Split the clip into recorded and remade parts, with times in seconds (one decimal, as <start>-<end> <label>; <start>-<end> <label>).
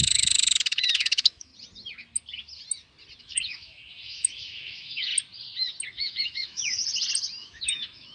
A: 0.0-1.5 remade; 1.5-3.2 recorded; 3.2-5.1 remade; 5.1-5.9 recorded; 5.9-6.8 remade; 6.8-7.4 recorded; 7.4-8.1 remade